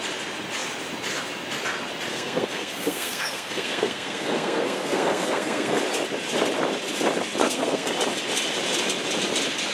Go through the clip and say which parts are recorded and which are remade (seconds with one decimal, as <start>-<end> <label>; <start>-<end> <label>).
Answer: 0.0-2.1 recorded; 2.1-5.8 remade; 5.8-7.4 recorded; 7.4-7.9 remade; 7.9-9.7 recorded